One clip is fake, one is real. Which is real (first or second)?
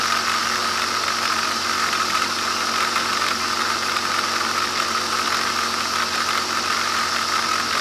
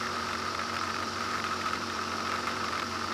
first